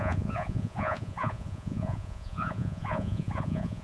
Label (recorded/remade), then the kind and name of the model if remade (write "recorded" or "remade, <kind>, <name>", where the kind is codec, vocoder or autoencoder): remade, vocoder, Vocos